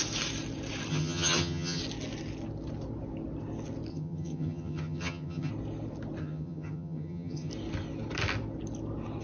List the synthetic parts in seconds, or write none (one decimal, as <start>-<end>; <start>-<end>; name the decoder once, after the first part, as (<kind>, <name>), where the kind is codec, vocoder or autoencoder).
0.9-1.8 (vocoder, HiFi-GAN); 3.9-5.5; 6.2-7.5